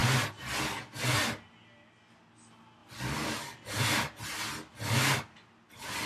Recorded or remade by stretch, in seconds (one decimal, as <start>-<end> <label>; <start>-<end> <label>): 0.0-6.1 recorded